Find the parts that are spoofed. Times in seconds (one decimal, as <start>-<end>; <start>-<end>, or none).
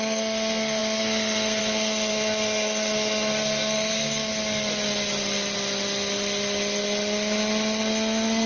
0.0-4.3; 7.8-8.5